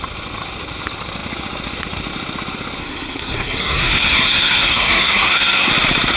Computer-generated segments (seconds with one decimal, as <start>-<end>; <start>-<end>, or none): 2.8-5.7